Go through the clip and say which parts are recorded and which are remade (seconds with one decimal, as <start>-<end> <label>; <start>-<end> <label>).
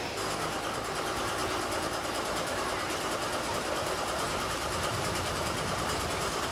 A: 0.0-1.4 recorded; 1.4-5.3 remade; 5.3-6.5 recorded